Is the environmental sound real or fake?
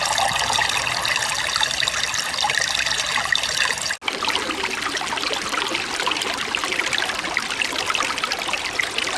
real